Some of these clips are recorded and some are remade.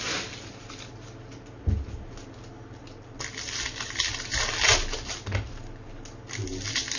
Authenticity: recorded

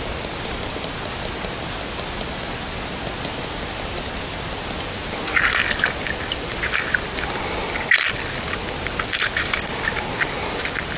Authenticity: recorded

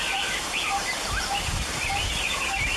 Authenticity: remade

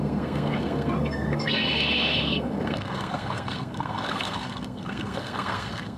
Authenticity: remade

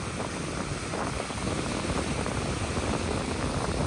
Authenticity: recorded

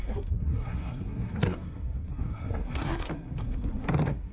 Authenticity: remade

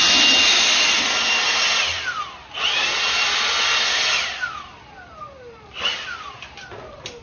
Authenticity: recorded